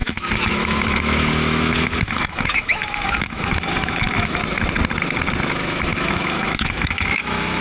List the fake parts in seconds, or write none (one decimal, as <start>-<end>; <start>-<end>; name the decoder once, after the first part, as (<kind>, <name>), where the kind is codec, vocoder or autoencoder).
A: 0.0-4.4 (autoencoder, DAC-VAE); 5.5-7.6